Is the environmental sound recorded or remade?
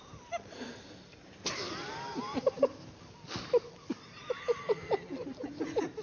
recorded